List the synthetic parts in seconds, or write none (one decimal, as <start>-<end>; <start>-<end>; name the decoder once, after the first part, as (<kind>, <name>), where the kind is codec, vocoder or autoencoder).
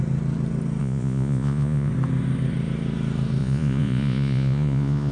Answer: 0.8-1.9 (vocoder, Vocos); 3.4-5.1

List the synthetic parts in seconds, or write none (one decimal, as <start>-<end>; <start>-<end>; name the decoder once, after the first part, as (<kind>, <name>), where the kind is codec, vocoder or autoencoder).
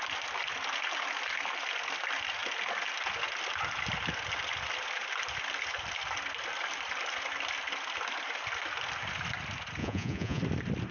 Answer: 9.8-10.4 (vocoder, Vocos)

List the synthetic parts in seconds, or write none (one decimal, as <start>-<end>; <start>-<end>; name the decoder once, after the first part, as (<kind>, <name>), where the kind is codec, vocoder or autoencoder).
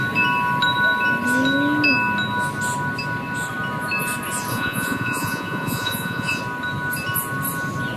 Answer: 4.5-6.4 (vocoder, Vocos)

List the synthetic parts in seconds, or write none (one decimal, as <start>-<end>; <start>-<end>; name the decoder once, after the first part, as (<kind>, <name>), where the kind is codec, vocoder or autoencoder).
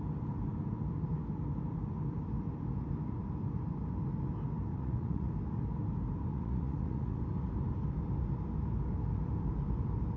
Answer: 4.7-5.3 (vocoder, Vocos); 6.3-7.2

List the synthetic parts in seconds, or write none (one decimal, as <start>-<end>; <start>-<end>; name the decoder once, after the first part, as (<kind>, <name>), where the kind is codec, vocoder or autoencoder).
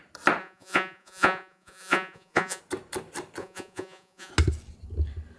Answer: 0.4-2.6 (vocoder, Vocos); 3.4-4.3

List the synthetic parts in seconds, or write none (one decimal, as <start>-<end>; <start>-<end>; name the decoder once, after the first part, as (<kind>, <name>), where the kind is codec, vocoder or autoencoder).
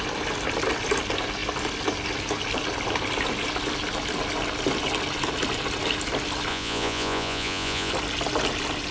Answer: 6.5-7.9 (vocoder, Vocos)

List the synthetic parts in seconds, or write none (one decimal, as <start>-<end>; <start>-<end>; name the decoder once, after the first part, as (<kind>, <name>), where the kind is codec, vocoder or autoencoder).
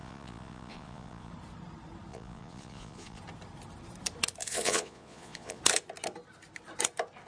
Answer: 0.0-1.3 (vocoder, Vocos); 2.1-3.2; 4.4-5.6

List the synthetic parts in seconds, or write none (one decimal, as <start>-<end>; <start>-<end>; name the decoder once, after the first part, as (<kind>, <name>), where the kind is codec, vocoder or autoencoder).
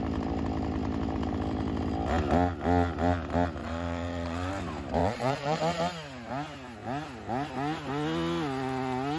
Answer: 3.6-4.5 (vocoder, Vocos); 5.0-5.6